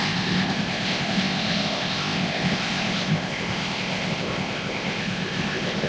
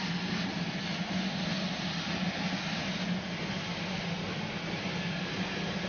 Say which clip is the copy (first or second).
first